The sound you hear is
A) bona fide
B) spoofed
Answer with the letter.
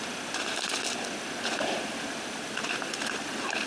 A